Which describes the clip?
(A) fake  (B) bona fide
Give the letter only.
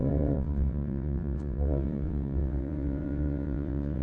A